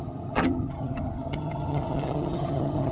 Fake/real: fake